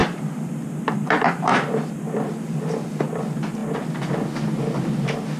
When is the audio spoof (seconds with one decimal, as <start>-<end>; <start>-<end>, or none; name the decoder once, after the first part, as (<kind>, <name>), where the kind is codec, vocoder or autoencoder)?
0.0-3.2 (vocoder, BigVGAN v2)